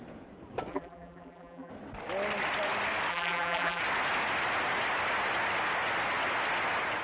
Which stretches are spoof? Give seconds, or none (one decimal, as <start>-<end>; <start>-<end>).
0.7-1.7; 3.1-3.8